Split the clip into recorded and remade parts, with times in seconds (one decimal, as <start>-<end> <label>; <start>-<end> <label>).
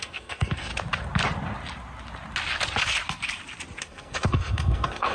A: 0.0-0.7 remade; 0.7-3.8 recorded; 3.8-5.1 remade